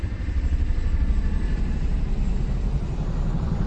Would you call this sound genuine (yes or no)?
yes